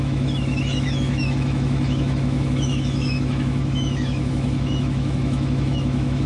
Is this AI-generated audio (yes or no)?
yes